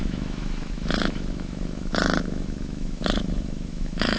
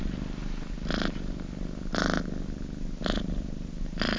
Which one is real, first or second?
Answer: second